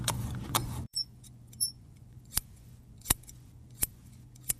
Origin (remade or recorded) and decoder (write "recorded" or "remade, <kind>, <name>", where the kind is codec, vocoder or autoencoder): remade, vocoder, Vocos